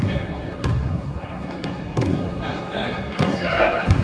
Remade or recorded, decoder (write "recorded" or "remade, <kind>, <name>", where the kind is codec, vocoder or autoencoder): remade, codec, SNAC